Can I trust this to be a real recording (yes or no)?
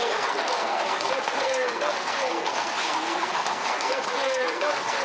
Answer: no